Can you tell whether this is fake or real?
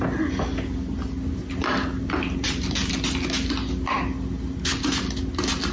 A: real